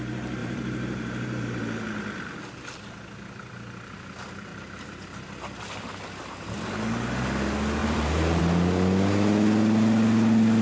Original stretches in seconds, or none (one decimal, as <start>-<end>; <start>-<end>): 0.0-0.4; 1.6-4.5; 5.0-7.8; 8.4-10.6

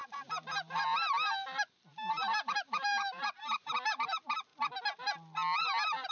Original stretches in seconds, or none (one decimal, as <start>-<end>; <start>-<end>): 4.5-6.1

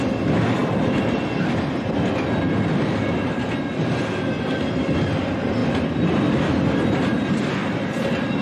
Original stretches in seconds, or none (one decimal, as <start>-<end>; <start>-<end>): 0.0-5.6; 6.3-7.6